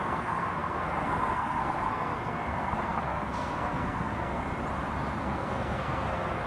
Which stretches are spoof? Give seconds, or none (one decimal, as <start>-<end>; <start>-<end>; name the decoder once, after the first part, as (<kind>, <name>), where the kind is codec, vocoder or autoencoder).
0.0-4.5 (codec, SNAC); 5.2-6.5